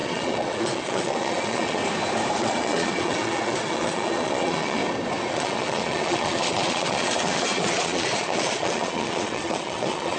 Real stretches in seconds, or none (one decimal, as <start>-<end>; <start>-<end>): 1.8-2.4; 4.8-5.3